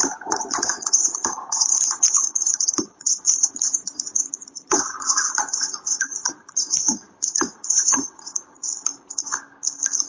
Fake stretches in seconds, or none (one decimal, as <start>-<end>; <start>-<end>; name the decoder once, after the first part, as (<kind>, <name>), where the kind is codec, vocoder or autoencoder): 0.0-8.7 (vocoder, Vocos)